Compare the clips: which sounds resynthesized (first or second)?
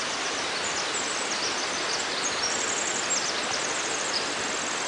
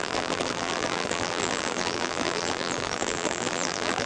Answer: second